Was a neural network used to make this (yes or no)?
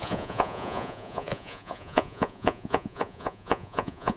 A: yes